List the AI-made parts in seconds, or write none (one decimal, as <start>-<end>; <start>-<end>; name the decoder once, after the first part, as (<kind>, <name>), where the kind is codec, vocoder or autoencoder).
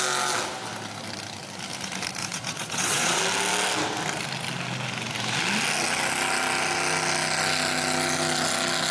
2.2-3.2 (vocoder, Vocos)